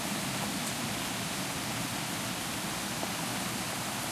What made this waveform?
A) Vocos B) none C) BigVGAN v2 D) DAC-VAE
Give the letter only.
B